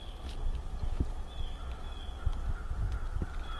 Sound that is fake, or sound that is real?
real